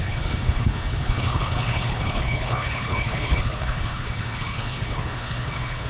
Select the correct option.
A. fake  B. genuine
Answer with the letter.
A